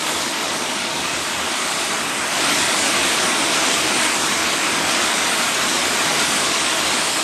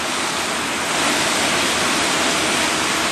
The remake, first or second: first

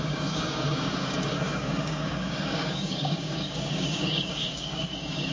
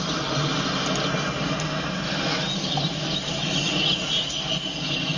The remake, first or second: first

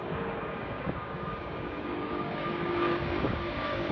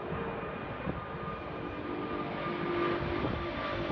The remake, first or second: first